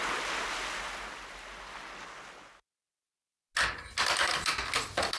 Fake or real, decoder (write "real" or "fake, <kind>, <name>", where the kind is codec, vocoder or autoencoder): real